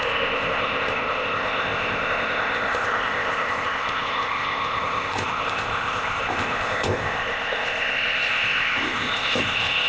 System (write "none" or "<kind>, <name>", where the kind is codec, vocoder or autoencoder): codec, ZipCodec